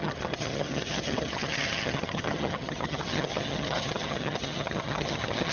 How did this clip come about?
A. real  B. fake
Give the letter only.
B